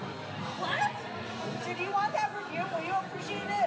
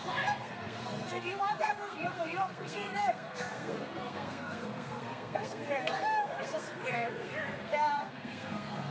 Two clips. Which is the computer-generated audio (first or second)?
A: second